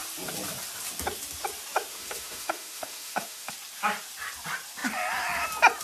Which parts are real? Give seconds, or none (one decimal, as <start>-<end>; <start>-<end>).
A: 0.0-1.9; 3.5-5.8